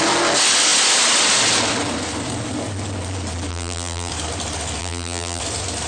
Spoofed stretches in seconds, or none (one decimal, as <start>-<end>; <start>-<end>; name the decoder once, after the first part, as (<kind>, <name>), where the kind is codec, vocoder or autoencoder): 3.5-4.1 (vocoder, BigVGAN v2); 4.8-5.4

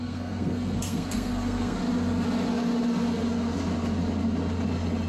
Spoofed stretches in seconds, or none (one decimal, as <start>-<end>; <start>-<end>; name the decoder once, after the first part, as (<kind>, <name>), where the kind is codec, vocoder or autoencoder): 0.0-1.8 (codec, SNAC)